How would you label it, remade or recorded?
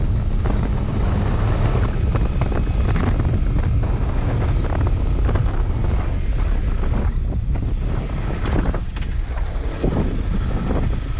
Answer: recorded